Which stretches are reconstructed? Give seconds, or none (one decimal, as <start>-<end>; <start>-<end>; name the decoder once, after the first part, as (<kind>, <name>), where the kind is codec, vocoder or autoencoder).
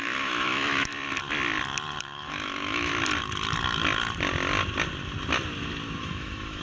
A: 0.0-0.9 (autoencoder, DAC-VAE); 2.0-2.9; 6.0-6.6